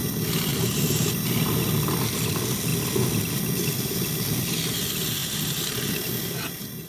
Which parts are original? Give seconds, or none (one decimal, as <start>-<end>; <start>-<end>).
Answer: 0.0-0.5; 1.1-5.2; 5.9-6.9